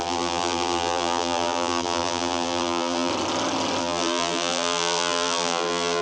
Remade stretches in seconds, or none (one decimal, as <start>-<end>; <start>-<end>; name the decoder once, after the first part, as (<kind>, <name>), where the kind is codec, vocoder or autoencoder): 0.0-3.1 (vocoder, BigVGAN v2); 3.8-6.0